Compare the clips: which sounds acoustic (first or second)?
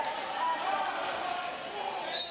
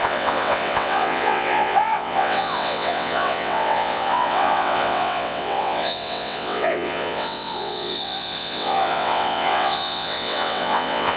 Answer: first